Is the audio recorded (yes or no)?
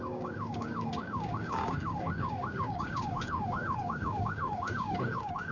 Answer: no